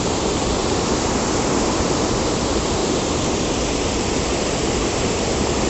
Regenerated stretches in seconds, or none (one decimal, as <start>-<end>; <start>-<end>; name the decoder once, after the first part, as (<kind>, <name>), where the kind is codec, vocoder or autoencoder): none